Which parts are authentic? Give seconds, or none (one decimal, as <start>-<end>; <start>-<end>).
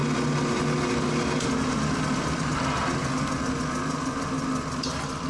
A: 0.0-5.3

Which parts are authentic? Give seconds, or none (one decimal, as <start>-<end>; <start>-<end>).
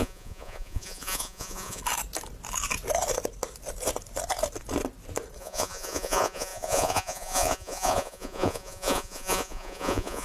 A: 1.8-5.4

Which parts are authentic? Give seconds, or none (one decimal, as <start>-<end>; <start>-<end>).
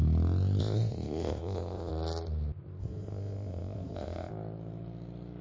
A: 0.0-0.6; 1.9-2.8; 4.3-5.4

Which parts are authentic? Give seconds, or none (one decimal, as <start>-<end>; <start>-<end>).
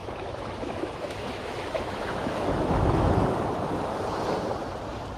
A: 3.1-5.2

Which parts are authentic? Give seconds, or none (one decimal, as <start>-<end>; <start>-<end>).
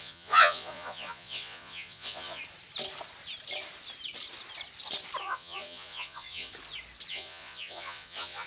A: 2.4-5.2; 6.5-7.1